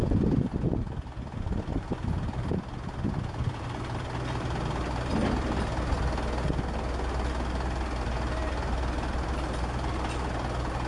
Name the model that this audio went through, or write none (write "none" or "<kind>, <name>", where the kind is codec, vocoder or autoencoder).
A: none